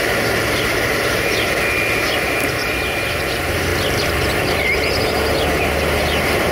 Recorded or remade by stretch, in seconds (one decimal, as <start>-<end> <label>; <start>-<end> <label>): 0.0-6.5 recorded